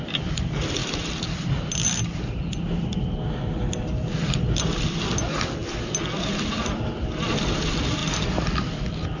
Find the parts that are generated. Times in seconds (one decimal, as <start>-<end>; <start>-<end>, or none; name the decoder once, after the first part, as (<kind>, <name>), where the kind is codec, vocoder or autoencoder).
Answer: none